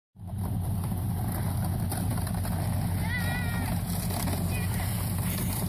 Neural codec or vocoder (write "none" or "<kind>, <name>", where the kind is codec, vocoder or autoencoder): none